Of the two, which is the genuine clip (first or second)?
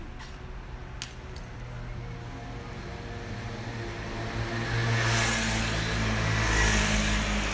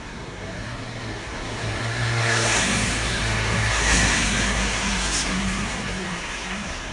first